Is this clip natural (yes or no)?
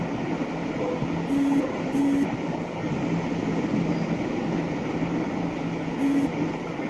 yes